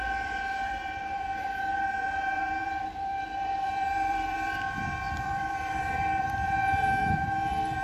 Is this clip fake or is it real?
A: fake